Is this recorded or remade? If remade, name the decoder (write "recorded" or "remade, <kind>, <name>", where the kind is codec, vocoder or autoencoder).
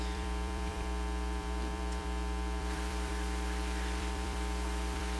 remade, vocoder, BigVGAN v2